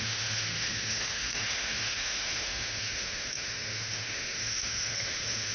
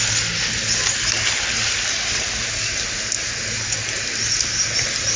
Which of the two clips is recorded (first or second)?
second